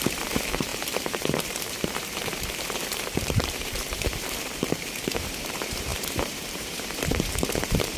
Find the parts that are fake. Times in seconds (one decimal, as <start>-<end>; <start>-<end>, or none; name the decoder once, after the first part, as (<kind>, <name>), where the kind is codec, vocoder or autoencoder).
0.0-8.0 (vocoder, BigVGAN v2)